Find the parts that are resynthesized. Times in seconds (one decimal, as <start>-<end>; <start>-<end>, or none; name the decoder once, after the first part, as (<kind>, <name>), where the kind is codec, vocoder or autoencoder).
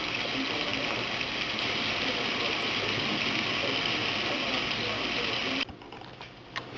0.0-6.8 (vocoder, BigVGAN v2)